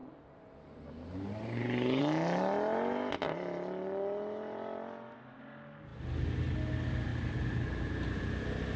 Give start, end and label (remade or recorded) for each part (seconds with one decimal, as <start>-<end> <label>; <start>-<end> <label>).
0.0-2.0 remade; 2.0-7.1 recorded; 7.1-8.2 remade; 8.2-8.8 recorded